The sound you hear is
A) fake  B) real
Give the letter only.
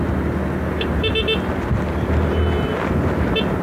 B